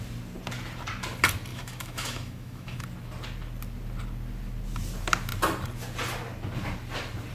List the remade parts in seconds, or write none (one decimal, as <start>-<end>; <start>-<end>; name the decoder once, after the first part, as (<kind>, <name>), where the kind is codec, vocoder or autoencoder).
1.5-2.8 (autoencoder, DAC-VAE)